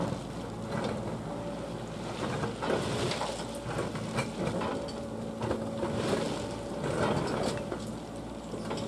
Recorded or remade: recorded